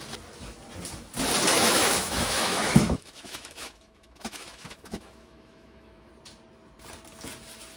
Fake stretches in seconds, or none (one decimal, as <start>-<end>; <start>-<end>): 1.5-6.1